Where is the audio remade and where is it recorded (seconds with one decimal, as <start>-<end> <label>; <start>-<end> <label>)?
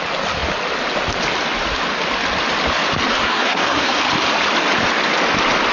0.0-3.1 recorded; 3.1-4.0 remade; 4.0-5.7 recorded